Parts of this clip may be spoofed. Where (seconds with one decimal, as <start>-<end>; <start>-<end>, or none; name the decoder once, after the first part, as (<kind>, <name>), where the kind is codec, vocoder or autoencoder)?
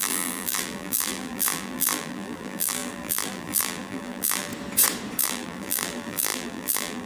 0.0-4.5 (vocoder, BigVGAN v2); 5.2-7.1